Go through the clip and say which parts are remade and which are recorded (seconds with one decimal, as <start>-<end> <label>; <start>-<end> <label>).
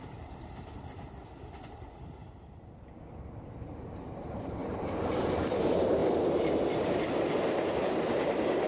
0.0-2.2 remade; 2.2-3.7 recorded; 3.7-6.0 remade; 6.0-7.8 recorded; 7.8-8.7 remade